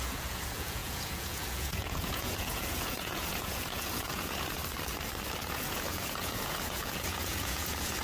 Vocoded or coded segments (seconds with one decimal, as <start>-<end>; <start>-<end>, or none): 0.0-4.6; 5.4-8.0